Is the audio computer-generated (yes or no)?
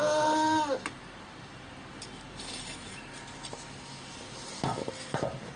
no